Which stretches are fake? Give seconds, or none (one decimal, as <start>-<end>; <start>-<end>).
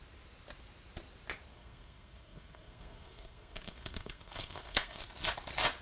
1.5-5.0